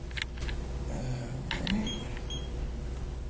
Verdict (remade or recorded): recorded